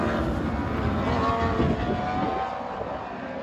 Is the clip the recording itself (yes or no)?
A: yes